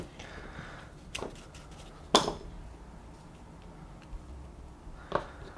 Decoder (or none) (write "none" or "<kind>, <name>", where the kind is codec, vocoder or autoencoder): none